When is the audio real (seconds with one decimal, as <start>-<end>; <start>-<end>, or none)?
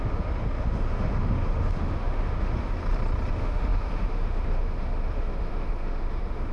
2.8-3.3